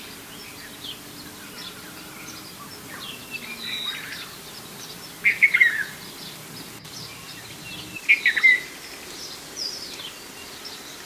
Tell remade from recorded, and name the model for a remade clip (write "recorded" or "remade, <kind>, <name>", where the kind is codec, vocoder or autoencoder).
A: recorded